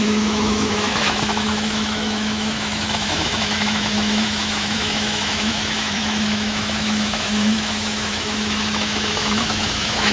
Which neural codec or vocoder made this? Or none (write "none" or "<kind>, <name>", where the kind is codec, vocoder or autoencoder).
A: autoencoder, DAC-VAE